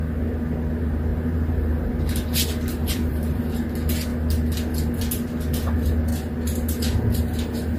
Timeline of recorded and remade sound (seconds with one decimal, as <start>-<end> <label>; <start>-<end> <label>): 0.0-1.1 recorded; 1.1-1.9 remade; 1.9-2.8 recorded; 2.8-3.4 remade; 3.4-7.8 recorded